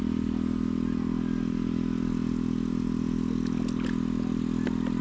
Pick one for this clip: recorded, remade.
recorded